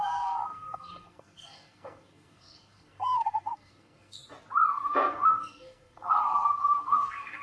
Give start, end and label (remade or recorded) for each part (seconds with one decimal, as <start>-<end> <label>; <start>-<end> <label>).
0.0-4.2 remade; 4.2-4.7 recorded; 4.7-7.4 remade